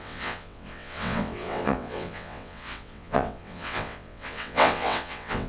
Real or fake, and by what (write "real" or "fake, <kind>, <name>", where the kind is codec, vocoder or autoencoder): fake, vocoder, WaveNeXt